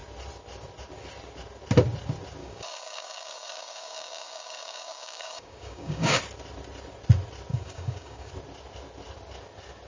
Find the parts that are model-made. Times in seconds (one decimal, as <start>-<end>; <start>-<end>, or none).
2.4-6.2; 7.5-8.3